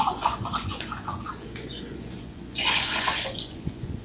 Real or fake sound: fake